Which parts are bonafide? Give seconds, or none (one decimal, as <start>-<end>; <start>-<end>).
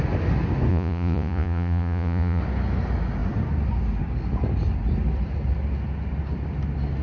0.0-0.7; 2.4-7.0